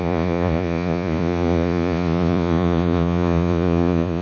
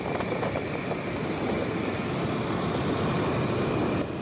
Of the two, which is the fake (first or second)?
first